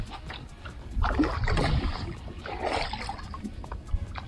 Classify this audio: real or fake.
real